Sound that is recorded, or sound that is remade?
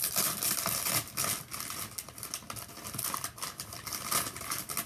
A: recorded